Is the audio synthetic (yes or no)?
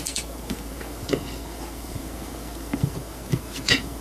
yes